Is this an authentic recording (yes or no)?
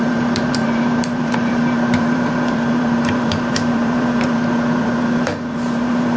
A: no